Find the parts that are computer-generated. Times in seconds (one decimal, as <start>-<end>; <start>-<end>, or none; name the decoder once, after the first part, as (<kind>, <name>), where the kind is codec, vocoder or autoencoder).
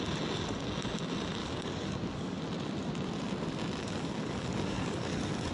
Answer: 1.4-2.4 (codec, DAC); 3.8-5.5